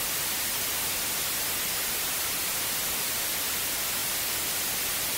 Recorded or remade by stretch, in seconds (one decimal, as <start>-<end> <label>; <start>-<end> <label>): 0.0-5.2 recorded